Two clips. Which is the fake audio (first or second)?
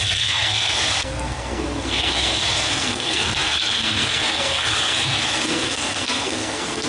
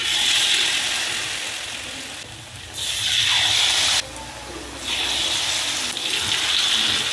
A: first